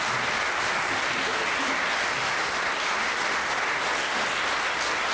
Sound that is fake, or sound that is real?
real